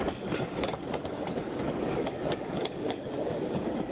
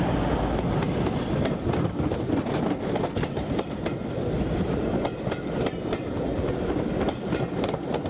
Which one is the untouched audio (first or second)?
second